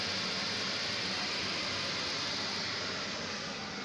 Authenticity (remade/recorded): recorded